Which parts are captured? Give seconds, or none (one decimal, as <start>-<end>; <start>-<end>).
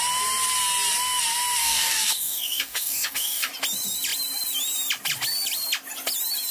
0.0-1.6; 3.5-6.5